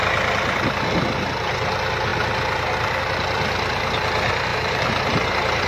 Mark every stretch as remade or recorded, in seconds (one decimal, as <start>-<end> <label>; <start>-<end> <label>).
0.0-4.5 recorded; 4.5-5.7 remade